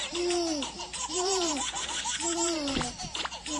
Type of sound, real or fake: fake